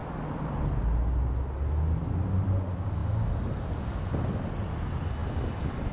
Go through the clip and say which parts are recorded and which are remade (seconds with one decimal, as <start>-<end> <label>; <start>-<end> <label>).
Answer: 0.0-5.9 recorded